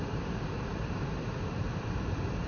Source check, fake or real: fake